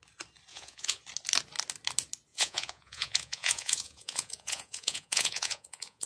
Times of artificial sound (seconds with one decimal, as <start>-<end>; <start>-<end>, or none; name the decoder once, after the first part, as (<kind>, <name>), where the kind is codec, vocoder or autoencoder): 0.5-1.0 (vocoder, Vocos); 2.3-6.1